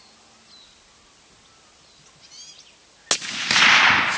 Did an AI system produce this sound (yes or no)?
no